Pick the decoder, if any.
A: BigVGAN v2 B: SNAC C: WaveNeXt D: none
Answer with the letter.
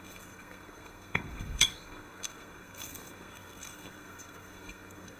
B